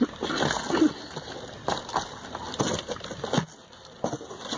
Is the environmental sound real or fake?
real